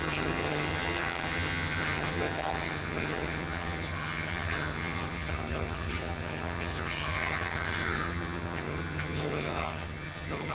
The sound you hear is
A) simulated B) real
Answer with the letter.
A